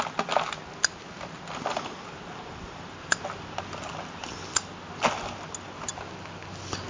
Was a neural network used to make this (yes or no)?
no